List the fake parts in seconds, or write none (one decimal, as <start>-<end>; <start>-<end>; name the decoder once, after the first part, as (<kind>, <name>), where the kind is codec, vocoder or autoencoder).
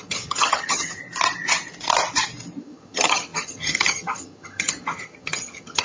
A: 0.0-1.0 (vocoder, HiFi-GAN); 2.6-5.8